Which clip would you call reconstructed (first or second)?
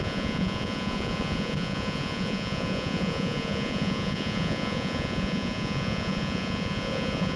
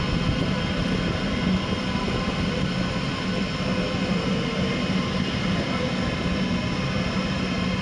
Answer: first